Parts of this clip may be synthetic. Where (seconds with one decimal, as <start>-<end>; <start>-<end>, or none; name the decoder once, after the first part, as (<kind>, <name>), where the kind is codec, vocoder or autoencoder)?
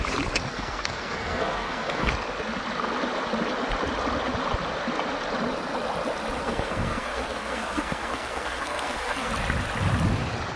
0.5-2.1 (codec, SNAC); 6.4-9.3